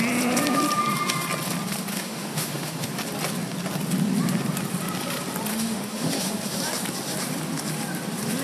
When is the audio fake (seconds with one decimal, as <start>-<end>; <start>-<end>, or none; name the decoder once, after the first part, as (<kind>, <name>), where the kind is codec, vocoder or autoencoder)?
1.9-2.9 (autoencoder, DAC-VAE); 5.5-6.3